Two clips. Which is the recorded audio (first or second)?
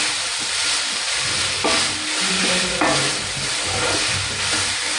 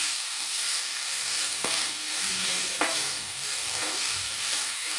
first